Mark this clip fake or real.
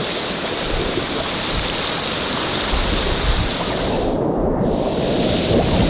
real